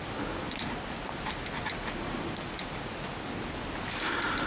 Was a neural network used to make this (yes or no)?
no